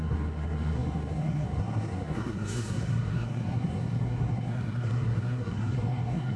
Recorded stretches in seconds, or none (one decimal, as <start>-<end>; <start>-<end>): none